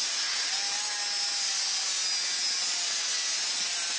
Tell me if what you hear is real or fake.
real